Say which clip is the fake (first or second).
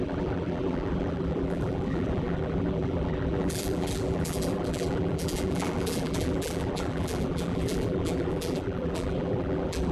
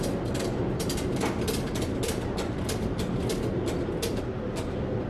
first